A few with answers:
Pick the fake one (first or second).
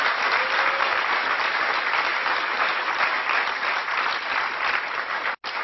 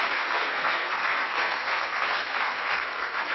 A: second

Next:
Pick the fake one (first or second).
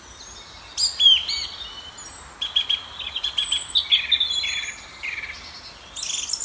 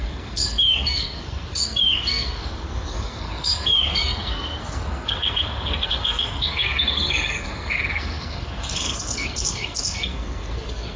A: second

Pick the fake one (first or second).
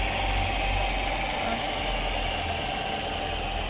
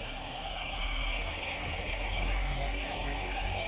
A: second